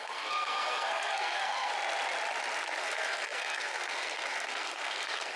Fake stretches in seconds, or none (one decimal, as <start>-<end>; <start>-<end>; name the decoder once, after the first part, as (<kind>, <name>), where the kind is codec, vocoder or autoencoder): 0.0-1.7 (codec, SNAC); 2.8-5.4